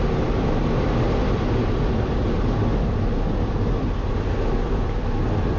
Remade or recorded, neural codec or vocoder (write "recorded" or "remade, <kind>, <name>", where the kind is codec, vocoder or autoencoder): recorded